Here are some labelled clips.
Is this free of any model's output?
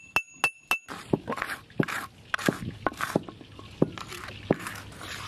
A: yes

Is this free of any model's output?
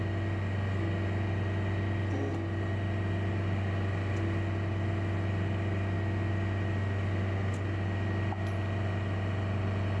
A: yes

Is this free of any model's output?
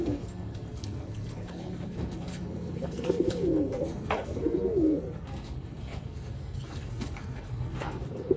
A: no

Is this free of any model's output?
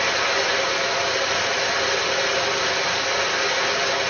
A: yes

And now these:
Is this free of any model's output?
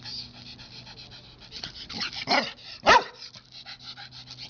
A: yes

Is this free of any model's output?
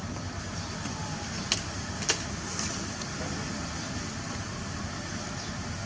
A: yes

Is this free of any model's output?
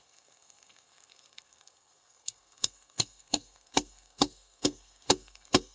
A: no